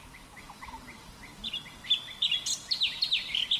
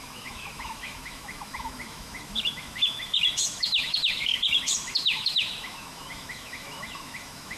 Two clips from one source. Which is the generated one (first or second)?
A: second